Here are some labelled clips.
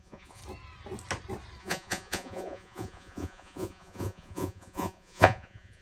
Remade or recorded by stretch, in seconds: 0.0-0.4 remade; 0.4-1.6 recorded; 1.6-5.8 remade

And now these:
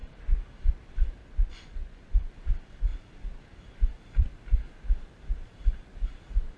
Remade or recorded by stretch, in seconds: 0.0-1.2 recorded; 1.2-2.3 remade; 2.3-6.6 recorded

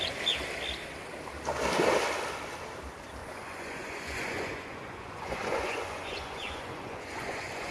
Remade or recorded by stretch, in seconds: 0.0-3.2 recorded; 3.2-7.7 remade

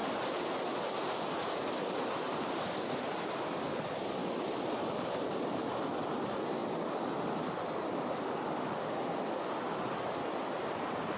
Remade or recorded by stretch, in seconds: 0.0-11.2 recorded

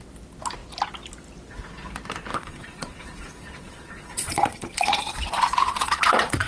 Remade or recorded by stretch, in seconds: 0.0-2.3 recorded; 2.3-6.5 remade

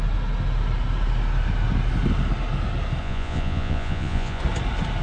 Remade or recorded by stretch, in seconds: 0.0-3.0 recorded; 3.0-4.4 remade; 4.4-5.0 recorded